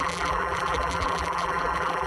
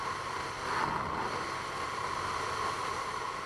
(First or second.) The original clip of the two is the second